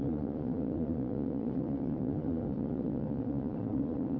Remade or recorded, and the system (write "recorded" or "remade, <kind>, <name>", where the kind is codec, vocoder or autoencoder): remade, vocoder, Vocos